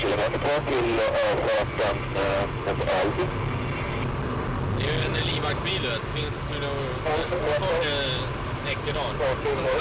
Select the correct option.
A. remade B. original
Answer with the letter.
B